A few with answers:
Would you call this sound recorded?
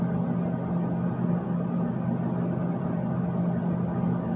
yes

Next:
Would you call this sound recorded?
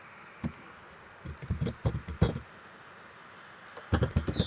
yes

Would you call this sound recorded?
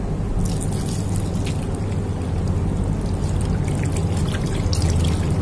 yes